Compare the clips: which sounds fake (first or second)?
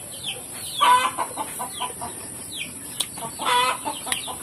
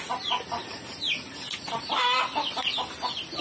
first